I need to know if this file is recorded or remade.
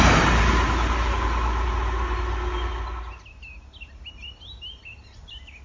recorded